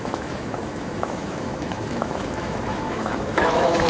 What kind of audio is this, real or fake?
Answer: fake